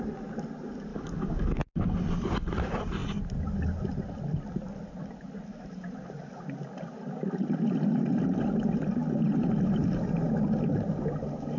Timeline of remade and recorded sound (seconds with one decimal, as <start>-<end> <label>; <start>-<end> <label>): 0.0-0.9 recorded; 0.9-1.6 remade; 1.6-11.6 recorded